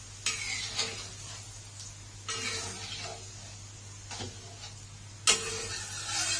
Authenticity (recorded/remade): recorded